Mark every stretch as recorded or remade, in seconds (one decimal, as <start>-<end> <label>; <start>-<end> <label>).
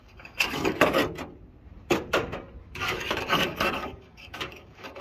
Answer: 0.0-1.0 remade; 1.0-2.6 recorded; 2.6-5.0 remade